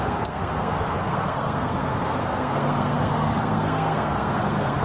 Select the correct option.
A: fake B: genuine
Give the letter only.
A